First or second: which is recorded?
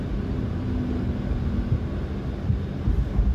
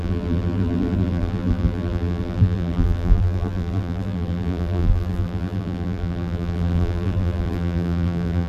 first